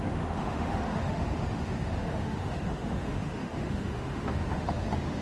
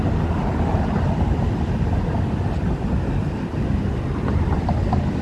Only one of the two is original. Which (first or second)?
second